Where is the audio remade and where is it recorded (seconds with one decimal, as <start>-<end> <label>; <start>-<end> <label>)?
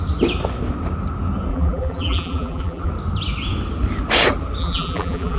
0.0-1.5 recorded; 1.5-2.9 remade; 2.9-4.6 recorded; 4.6-5.4 remade